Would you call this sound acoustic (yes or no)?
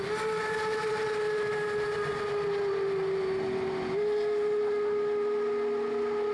yes